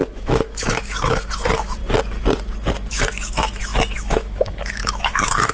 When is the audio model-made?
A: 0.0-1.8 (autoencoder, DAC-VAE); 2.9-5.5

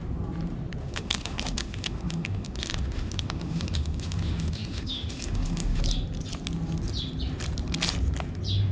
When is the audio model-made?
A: 0.8-5.8 (autoencoder, DAC-VAE)

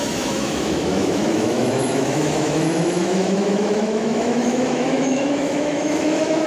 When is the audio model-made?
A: 0.0-6.5 (autoencoder, DAC-VAE)

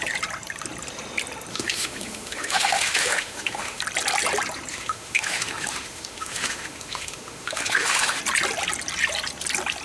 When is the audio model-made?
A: 1.5-3.8 (autoencoder, DAC-VAE); 4.7-8.2

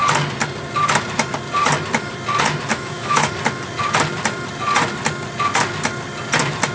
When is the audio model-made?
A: 2.7-3.3 (autoencoder, DAC-VAE)

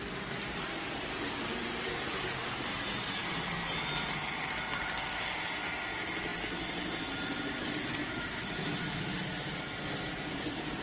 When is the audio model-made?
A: 8.0-9.0 (autoencoder, DAC-VAE)

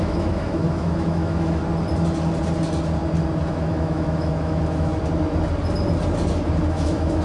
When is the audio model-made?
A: 0.0-1.6 (autoencoder, DAC-VAE); 3.4-4.9; 6.7-7.2

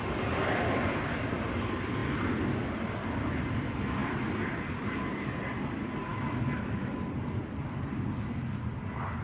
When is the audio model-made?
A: 6.1-7.1 (autoencoder, DAC-VAE)